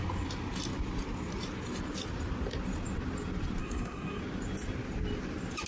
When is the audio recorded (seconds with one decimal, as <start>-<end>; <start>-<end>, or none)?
0.0-3.6; 4.2-5.7

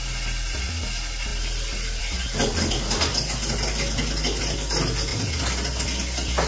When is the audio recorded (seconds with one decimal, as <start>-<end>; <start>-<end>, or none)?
0.0-6.5